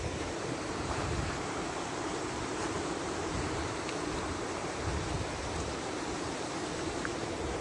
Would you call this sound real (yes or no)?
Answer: no